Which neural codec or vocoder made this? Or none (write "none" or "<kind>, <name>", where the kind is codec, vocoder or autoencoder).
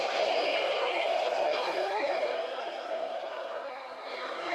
codec, SNAC